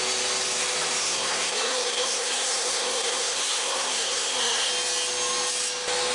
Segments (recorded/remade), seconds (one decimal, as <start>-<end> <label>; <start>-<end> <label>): 0.0-1.0 recorded; 1.0-4.7 remade; 4.7-6.1 recorded